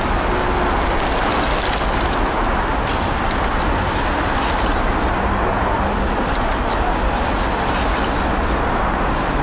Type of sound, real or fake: real